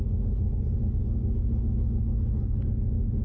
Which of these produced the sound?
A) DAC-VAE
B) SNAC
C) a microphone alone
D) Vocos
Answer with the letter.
C